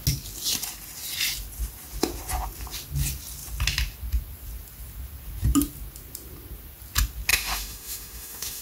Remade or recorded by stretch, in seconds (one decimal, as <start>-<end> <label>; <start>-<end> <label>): 0.0-7.3 recorded; 7.3-8.6 remade